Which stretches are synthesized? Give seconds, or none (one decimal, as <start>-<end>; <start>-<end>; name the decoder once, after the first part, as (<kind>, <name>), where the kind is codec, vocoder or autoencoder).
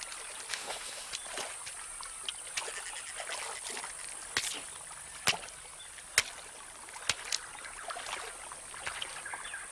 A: 0.5-1.1 (autoencoder, DAC-VAE)